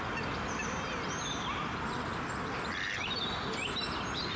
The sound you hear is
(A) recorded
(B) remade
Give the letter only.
A